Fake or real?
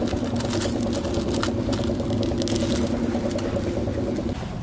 real